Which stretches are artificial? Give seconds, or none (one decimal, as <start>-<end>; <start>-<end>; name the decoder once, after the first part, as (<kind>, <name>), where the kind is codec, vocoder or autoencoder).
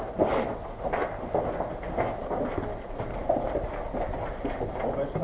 none